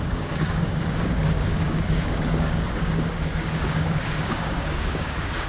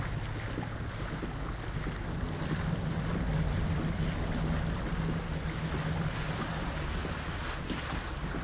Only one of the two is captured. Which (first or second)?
second